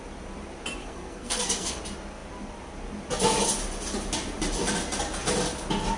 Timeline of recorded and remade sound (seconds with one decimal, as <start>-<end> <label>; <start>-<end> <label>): 0.0-0.8 recorded; 0.8-1.8 remade; 1.8-6.0 recorded